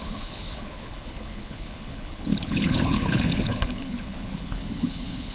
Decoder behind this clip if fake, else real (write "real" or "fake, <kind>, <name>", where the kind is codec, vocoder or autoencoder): fake, codec, HILCodec